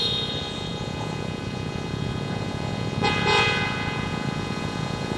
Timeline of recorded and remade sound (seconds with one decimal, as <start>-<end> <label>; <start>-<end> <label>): 0.0-5.2 remade